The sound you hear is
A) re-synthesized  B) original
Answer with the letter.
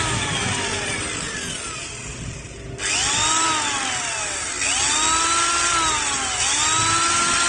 B